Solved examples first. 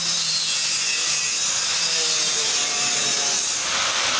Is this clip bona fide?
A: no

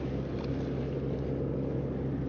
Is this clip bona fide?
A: yes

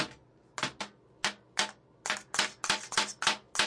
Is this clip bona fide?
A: yes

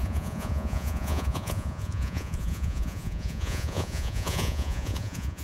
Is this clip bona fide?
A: no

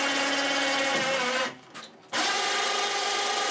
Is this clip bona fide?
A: yes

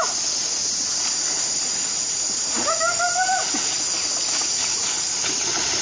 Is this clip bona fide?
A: yes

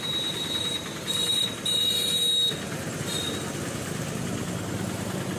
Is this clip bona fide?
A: yes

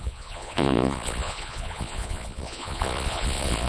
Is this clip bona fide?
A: no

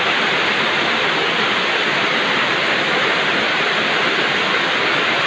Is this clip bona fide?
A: no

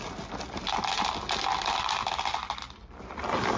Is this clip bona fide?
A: yes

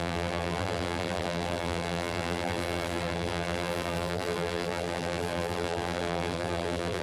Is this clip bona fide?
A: no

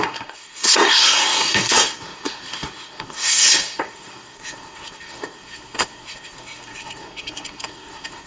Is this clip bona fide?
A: no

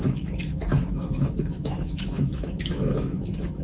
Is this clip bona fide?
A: no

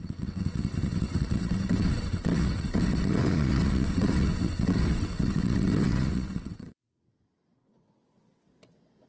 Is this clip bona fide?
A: no